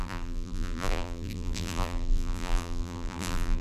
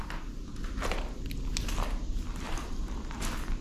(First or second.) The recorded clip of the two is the second